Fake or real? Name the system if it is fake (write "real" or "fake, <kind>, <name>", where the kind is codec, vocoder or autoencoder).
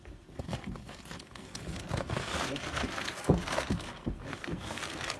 fake, codec, SNAC